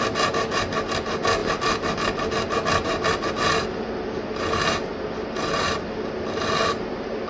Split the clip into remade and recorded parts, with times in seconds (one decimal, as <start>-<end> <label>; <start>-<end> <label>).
0.0-7.3 recorded